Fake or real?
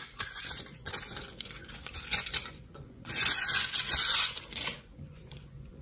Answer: fake